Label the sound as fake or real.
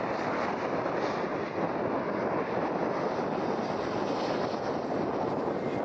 real